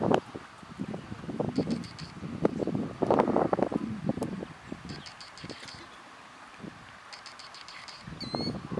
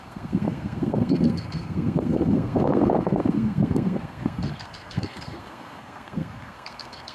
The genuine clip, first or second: first